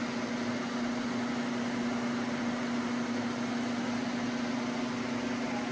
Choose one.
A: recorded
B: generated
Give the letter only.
A